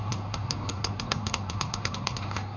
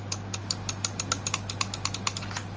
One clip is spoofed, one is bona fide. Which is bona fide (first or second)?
second